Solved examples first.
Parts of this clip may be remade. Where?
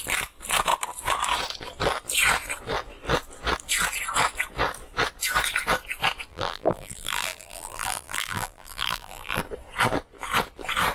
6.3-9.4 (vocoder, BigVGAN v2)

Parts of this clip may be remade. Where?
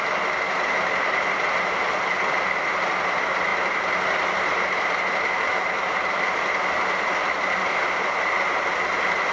none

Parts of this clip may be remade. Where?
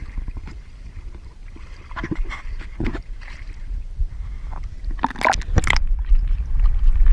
0.0-4.3 (vocoder, BigVGAN v2)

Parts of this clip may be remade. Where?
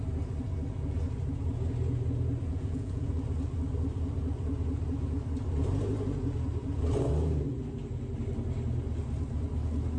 2.5-3.1 (vocoder, Vocos)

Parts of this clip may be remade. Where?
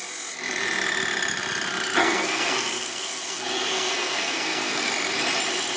2.0-4.9 (codec, SNAC)